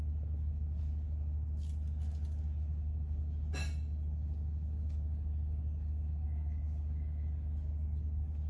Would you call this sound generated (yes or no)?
no